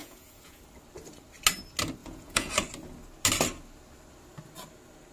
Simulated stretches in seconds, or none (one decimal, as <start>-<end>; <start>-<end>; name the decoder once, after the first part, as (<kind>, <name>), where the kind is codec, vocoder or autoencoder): 0.0-0.6 (vocoder, Vocos); 2.0-2.5